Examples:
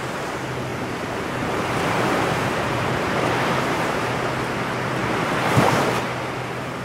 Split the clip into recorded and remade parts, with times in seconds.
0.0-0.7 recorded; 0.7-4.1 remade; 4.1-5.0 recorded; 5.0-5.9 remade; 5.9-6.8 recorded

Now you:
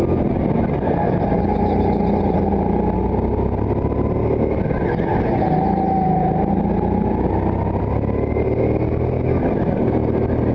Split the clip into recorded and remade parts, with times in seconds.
0.0-10.5 recorded

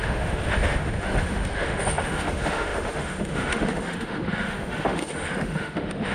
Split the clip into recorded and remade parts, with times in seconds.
0.0-6.1 remade

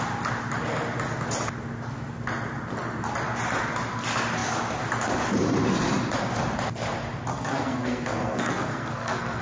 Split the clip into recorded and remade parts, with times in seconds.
0.0-7.3 recorded; 7.3-9.4 remade

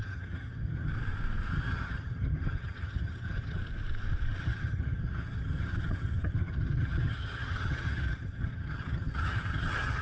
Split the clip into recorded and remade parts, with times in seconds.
0.0-0.9 remade; 0.9-1.5 recorded; 1.5-3.6 remade; 3.6-4.4 recorded; 4.4-10.0 remade

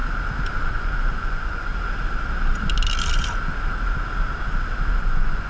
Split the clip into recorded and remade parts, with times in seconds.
0.0-0.7 recorded; 0.7-1.7 remade; 1.7-5.0 recorded; 5.0-5.5 remade